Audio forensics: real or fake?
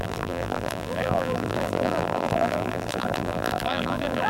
fake